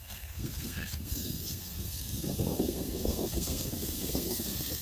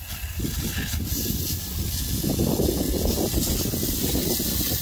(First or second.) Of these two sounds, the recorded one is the second